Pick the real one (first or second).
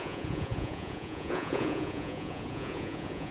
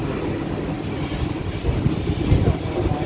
second